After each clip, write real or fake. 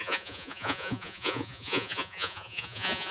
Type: fake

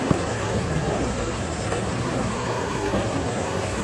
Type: fake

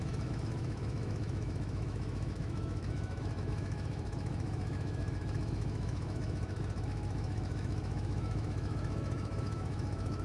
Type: fake